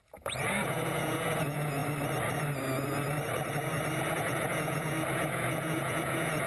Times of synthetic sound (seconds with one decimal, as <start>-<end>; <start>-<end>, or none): 0.0-1.8; 4.1-6.5